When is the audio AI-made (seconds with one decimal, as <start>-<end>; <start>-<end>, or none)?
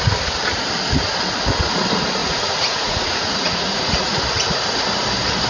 2.2-4.2